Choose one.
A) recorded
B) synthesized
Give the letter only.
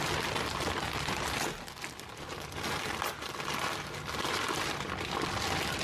A